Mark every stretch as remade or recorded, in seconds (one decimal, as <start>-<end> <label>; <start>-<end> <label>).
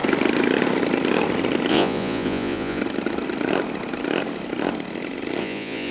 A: 0.0-1.7 recorded; 1.7-2.8 remade; 2.8-5.4 recorded; 5.4-5.9 remade